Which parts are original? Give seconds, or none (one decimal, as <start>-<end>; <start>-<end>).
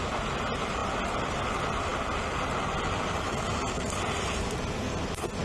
0.0-5.4